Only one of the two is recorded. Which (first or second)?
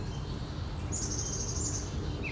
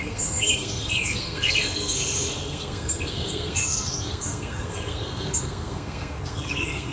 first